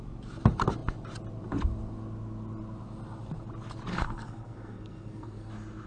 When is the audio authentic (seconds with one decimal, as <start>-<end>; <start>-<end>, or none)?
0.0-3.9; 5.5-5.9